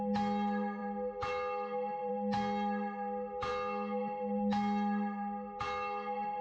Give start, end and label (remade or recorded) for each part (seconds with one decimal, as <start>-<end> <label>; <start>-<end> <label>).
0.0-6.4 recorded